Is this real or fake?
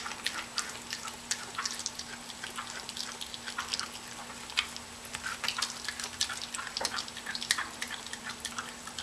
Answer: real